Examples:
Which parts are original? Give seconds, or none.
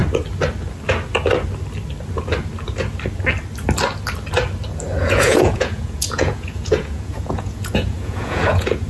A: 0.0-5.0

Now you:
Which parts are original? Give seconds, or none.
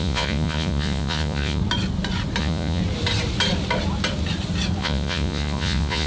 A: 1.6-2.4; 2.8-4.8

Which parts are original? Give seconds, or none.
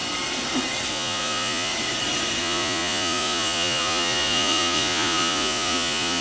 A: 0.0-0.9; 1.7-2.4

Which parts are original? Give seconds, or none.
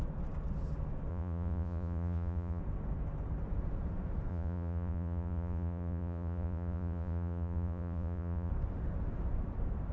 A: 0.0-1.1; 2.6-4.3; 8.5-9.9